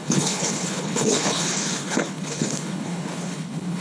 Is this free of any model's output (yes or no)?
no